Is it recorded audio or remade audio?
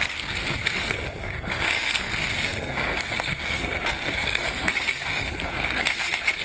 remade